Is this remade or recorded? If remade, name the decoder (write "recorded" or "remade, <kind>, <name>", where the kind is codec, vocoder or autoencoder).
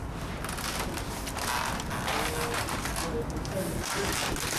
recorded